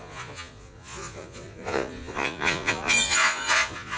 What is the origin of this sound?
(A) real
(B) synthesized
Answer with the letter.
B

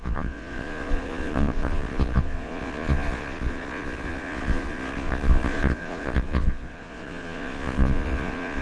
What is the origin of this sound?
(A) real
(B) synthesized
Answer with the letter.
B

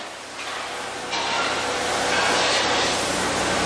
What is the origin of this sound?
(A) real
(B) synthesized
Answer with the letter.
A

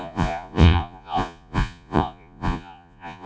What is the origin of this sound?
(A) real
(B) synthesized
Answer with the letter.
B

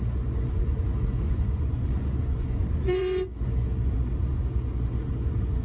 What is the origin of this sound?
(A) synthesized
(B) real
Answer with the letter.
A